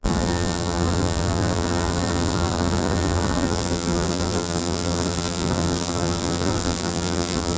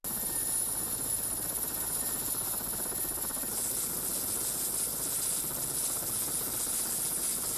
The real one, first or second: second